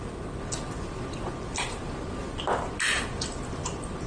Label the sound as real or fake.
real